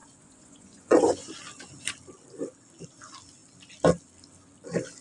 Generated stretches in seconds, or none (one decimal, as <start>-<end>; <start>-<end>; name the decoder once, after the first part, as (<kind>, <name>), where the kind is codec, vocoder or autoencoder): 0.0-1.3 (vocoder, Vocos)